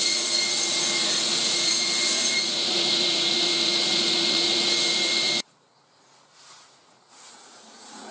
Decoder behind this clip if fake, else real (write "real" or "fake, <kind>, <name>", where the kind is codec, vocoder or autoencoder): fake, vocoder, Vocos